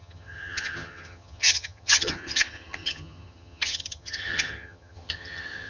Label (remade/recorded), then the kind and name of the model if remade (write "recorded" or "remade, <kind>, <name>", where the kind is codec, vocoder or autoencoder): remade, vocoder, HiFi-GAN